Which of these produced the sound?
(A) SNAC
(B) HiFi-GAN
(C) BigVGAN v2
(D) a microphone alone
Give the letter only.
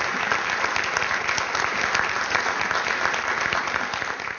D